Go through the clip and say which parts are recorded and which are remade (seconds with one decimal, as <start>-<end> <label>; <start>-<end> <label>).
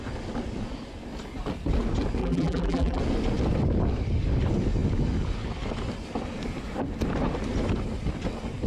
0.0-2.2 recorded; 2.2-3.0 remade; 3.0-8.7 recorded